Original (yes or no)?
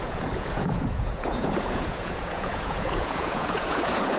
no